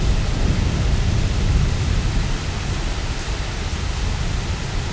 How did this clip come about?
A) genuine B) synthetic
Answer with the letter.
A